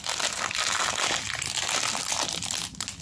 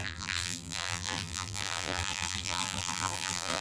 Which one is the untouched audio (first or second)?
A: first